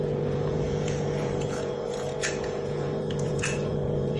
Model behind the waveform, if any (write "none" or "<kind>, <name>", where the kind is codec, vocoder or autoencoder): vocoder, Vocos